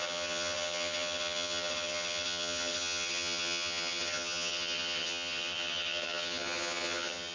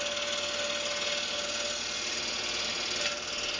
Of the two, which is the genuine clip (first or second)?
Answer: second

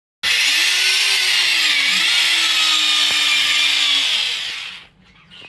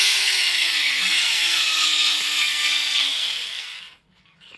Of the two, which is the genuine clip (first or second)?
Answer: first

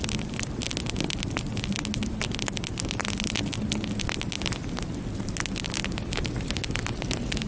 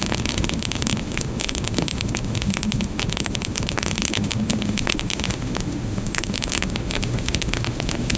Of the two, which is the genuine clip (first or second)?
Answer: first